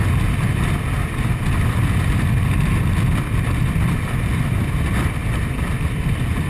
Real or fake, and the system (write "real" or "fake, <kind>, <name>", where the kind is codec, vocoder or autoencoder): real